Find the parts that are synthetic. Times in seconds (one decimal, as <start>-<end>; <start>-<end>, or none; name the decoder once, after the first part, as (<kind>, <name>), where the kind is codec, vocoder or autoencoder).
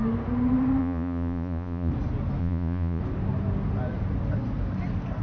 0.8-1.9 (vocoder, Vocos); 2.4-3.0